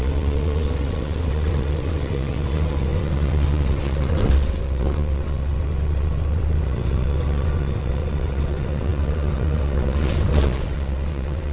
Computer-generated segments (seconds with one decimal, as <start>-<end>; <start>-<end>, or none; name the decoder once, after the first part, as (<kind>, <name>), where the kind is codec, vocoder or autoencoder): 0.0-11.5 (vocoder, WaveNeXt)